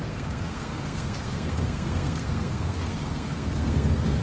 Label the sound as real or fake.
fake